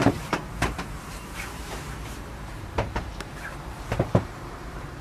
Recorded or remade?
remade